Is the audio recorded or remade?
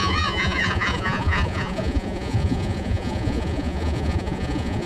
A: remade